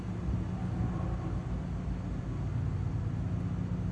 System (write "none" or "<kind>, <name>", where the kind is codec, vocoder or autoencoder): none